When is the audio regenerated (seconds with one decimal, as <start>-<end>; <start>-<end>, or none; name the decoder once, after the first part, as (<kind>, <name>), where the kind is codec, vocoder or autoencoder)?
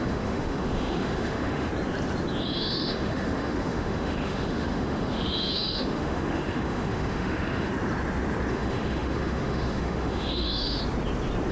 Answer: 0.0-1.7 (autoencoder, DAC-VAE); 2.4-7.7; 8.5-10.8